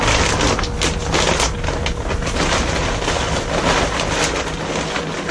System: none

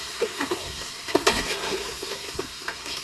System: codec, SNAC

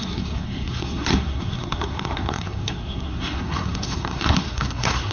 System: codec, SNAC